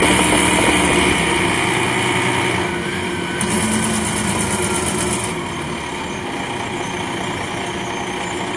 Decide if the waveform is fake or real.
real